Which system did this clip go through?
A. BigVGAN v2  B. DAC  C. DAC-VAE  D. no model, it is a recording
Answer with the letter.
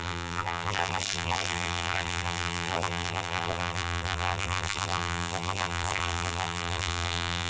A